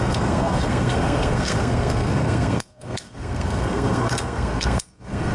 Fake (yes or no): yes